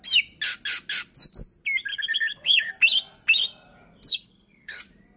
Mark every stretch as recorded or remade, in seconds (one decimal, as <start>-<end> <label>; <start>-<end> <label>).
0.0-1.9 recorded; 1.9-2.7 remade; 2.7-4.1 recorded; 4.1-4.8 remade; 4.8-5.2 recorded